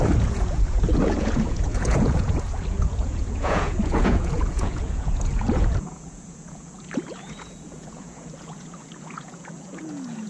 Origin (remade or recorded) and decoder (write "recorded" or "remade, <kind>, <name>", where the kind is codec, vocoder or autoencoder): remade, vocoder, Vocos